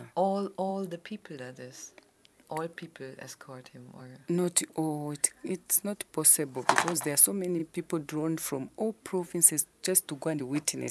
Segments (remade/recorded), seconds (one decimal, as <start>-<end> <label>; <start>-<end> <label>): 0.0-0.7 remade; 0.7-2.2 recorded; 2.2-10.9 remade